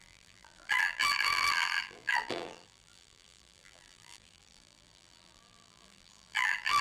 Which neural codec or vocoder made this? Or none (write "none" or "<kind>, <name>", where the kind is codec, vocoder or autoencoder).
vocoder, BigVGAN v2